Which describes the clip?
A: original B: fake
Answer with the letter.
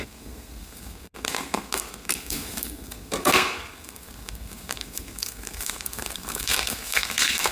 B